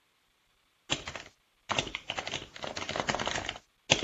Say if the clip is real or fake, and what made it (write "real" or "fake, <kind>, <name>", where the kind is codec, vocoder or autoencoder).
real